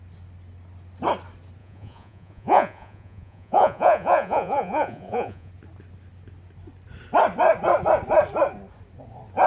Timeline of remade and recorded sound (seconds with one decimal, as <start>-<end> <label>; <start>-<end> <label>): 0.0-1.6 recorded; 1.6-5.5 remade; 5.5-9.5 recorded